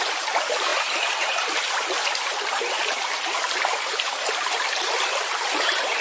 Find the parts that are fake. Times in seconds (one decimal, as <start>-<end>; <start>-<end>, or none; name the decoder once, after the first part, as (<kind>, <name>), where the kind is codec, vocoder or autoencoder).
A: none